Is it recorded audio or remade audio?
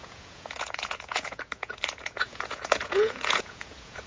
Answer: remade